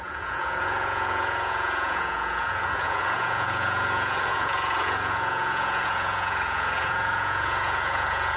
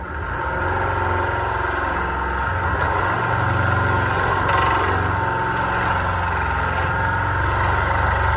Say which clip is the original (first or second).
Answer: second